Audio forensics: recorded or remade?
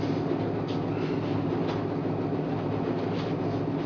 recorded